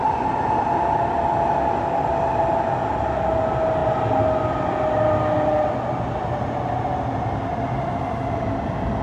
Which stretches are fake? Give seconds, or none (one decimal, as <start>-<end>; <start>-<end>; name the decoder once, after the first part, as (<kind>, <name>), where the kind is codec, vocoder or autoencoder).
none